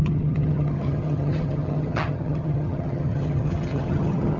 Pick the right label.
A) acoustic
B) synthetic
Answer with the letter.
B